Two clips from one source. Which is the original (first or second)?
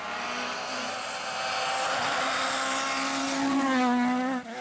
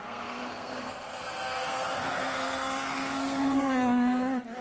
first